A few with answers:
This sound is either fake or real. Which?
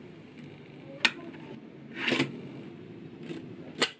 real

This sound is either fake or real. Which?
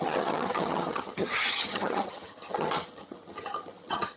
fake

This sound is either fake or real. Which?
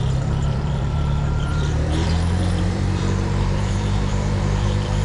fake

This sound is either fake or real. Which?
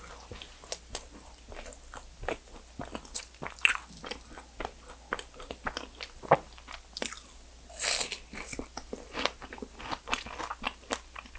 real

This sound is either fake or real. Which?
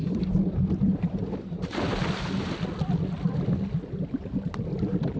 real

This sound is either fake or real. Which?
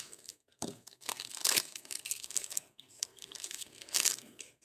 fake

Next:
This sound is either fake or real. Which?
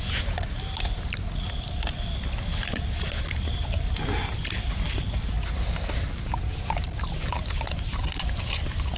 real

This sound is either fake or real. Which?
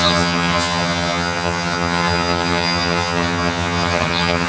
fake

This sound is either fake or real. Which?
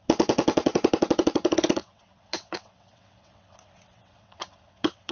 fake